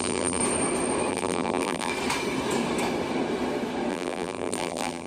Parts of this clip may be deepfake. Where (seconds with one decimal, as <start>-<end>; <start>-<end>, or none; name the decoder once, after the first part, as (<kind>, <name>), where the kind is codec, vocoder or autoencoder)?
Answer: 0.0-0.4 (vocoder, BigVGAN v2); 1.1-1.9; 3.9-5.1